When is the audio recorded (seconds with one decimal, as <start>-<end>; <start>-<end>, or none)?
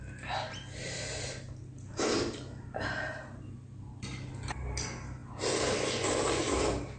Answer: 0.0-7.0